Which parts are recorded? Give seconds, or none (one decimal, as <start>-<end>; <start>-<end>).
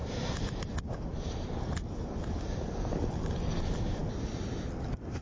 4.0-5.2